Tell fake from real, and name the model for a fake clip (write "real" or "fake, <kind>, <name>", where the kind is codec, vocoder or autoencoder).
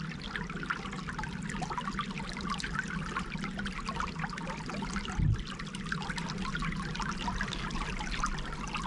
real